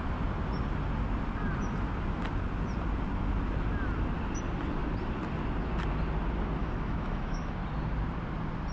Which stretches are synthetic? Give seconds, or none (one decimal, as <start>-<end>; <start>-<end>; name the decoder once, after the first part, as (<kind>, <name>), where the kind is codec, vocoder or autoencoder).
6.6-7.5 (autoencoder, DAC-VAE)